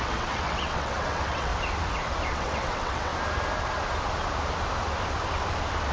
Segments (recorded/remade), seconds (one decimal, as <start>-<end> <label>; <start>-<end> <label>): 0.0-1.5 remade; 1.5-2.3 recorded; 2.3-3.1 remade; 3.1-5.9 recorded